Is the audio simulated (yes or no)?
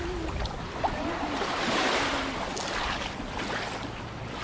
no